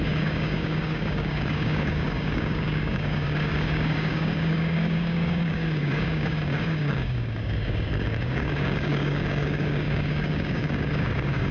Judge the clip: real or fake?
fake